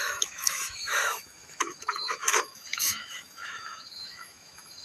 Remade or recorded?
remade